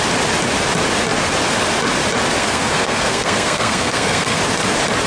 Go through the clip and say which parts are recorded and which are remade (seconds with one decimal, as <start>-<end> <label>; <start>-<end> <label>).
0.0-2.4 recorded; 2.4-4.4 remade; 4.4-5.1 recorded